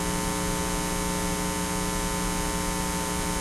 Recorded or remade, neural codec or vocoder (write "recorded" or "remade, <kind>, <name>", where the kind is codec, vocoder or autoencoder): recorded